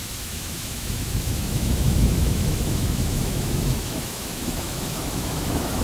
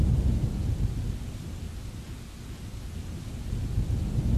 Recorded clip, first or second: second